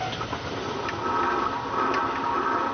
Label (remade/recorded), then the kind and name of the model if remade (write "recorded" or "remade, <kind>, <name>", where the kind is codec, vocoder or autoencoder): recorded